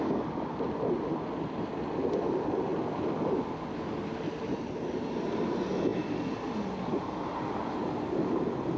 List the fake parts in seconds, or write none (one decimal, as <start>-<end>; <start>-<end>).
none